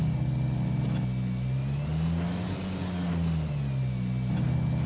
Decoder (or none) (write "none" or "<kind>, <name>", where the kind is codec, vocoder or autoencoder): none